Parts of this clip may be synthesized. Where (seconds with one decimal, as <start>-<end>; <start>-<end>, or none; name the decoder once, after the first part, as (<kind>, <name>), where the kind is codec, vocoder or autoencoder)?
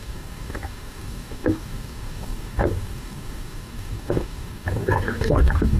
0.0-5.8 (codec, DAC)